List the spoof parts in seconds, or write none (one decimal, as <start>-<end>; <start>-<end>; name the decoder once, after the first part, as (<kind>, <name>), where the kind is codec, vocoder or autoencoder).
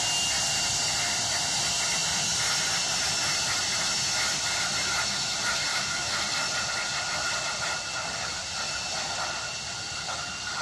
5.7-6.2 (autoencoder, DAC-VAE)